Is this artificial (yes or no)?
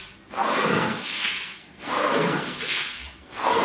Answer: yes